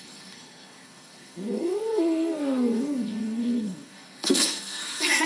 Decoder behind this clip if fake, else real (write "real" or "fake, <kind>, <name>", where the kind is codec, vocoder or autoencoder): fake, codec, SNAC